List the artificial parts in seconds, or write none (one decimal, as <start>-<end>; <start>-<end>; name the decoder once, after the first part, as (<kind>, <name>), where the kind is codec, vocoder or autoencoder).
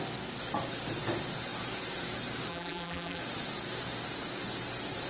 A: 2.5-3.2 (vocoder, BigVGAN v2)